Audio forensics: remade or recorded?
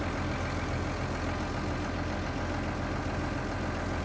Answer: recorded